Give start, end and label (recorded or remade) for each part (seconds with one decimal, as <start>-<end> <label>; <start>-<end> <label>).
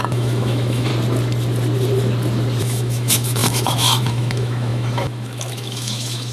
0.0-0.9 remade; 0.9-2.6 recorded; 2.6-6.3 remade